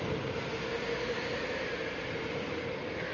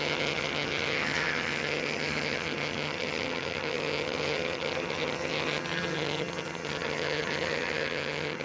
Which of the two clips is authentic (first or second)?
first